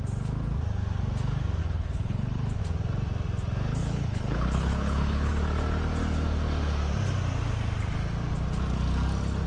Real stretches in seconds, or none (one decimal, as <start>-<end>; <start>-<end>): 0.0-1.6; 2.6-3.8; 5.3-9.5